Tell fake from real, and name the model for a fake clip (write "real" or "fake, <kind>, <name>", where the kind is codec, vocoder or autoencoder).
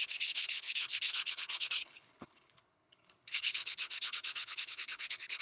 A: fake, codec, HILCodec